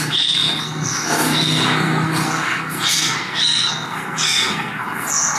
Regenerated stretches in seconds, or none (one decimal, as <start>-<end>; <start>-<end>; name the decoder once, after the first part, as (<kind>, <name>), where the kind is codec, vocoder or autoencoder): 0.0-5.4 (codec, SNAC)